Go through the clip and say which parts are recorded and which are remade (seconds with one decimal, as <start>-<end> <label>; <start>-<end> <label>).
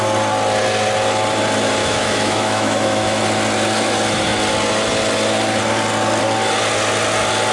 0.0-1.8 recorded; 1.8-3.2 remade; 3.2-7.5 recorded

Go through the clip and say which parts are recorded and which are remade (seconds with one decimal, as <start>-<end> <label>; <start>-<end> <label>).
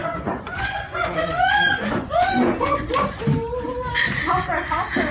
0.0-2.9 remade; 2.9-5.1 recorded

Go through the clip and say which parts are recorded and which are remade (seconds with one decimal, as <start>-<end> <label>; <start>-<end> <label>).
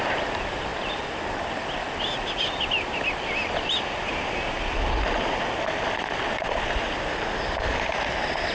0.0-8.5 recorded